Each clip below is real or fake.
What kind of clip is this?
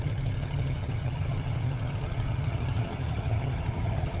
fake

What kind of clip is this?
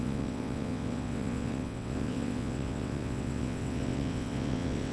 fake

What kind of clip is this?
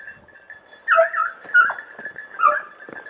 real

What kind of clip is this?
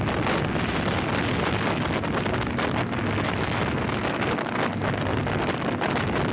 real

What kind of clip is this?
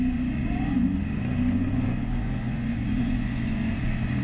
fake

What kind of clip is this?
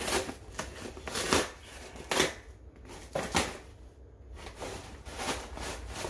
real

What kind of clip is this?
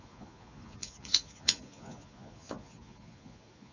fake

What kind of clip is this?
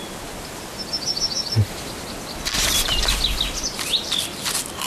real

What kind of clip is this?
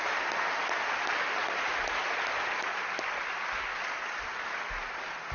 real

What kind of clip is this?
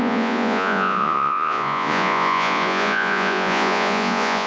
fake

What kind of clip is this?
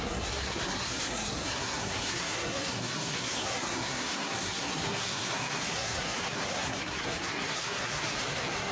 fake